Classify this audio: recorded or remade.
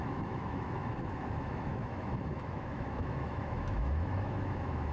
remade